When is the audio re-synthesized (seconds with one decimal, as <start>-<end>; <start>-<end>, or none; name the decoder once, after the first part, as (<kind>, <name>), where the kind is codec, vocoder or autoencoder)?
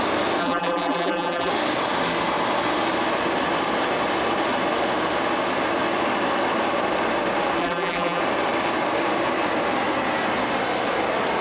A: 0.4-1.5 (vocoder, BigVGAN v2); 7.6-8.2